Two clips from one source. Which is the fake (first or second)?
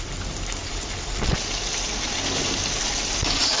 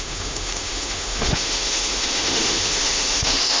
second